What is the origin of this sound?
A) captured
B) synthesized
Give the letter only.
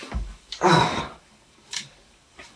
B